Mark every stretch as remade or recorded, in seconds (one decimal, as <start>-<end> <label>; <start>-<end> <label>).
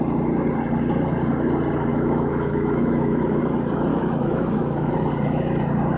0.0-1.9 recorded; 1.9-3.4 remade; 3.4-3.9 recorded; 3.9-4.9 remade; 4.9-6.0 recorded